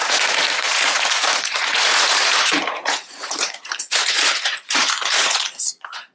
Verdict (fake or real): fake